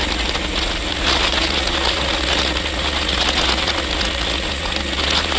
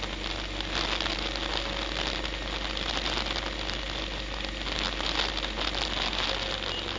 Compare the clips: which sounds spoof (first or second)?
first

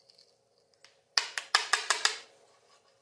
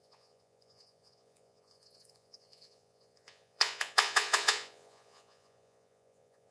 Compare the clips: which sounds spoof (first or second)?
second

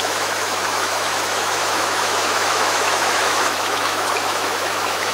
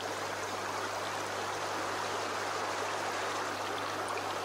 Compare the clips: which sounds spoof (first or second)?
first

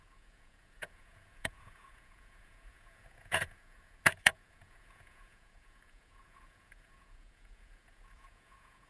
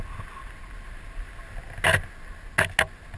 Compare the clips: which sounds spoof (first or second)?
first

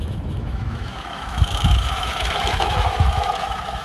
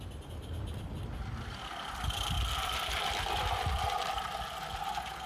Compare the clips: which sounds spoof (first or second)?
first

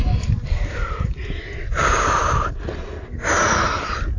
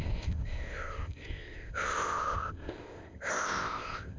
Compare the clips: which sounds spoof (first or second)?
second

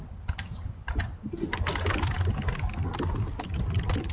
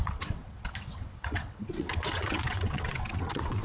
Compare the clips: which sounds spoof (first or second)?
second